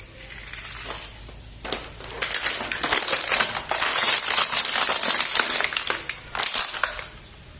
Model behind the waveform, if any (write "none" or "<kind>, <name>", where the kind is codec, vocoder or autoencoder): none